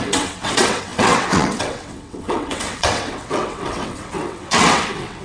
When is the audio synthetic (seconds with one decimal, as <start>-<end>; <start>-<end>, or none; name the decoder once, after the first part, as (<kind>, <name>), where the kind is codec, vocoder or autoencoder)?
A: 0.0-5.2 (vocoder, WaveNeXt)